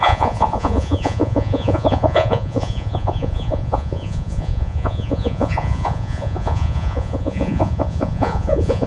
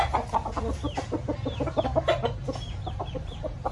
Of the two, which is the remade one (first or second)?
first